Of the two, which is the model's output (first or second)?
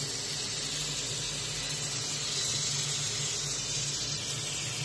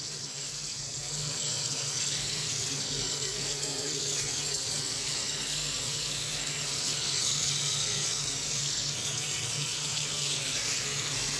second